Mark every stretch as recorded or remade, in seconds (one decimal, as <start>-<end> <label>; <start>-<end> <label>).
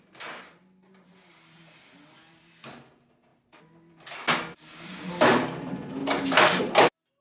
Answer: 0.0-7.2 recorded